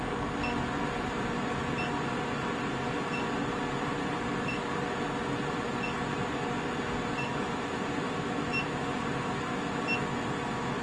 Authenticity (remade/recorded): recorded